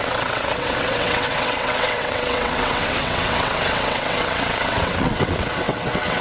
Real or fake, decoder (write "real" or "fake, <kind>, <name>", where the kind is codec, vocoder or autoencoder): fake, vocoder, WaveNeXt